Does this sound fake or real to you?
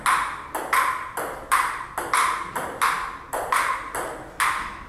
real